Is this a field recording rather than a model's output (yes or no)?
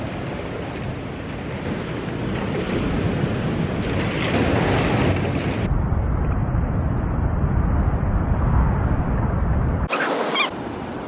yes